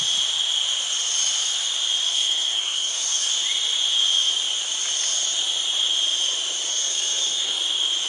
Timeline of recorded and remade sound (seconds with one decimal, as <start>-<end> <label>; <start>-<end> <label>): 0.0-2.1 recorded; 2.1-3.3 remade; 3.3-6.7 recorded; 6.7-7.6 remade; 7.6-8.1 recorded